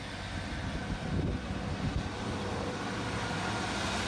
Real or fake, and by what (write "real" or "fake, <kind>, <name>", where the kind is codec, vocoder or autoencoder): real